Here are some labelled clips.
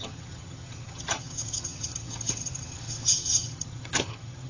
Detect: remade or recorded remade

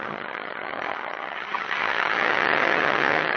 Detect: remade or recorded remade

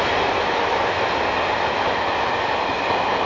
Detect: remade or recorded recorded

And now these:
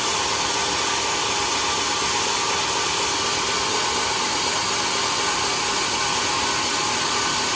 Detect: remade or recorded recorded